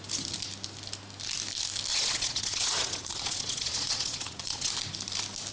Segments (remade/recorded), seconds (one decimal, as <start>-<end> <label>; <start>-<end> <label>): 0.0-1.9 recorded; 1.9-4.7 remade; 4.7-5.5 recorded